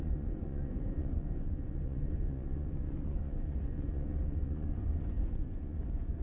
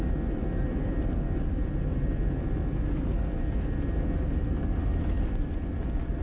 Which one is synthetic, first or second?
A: first